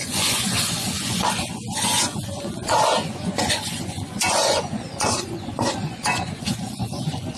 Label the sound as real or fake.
fake